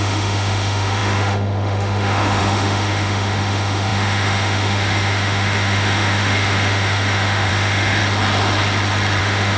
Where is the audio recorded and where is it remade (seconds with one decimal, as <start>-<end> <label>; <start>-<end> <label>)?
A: 0.0-8.0 remade; 8.0-9.2 recorded; 9.2-9.6 remade